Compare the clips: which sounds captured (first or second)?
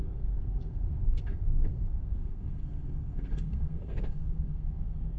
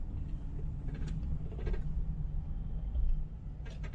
second